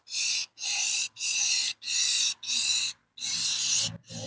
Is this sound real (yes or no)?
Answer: yes